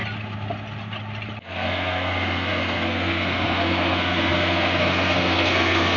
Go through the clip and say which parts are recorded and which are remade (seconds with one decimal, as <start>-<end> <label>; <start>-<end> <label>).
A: 0.0-1.4 recorded; 1.4-6.0 remade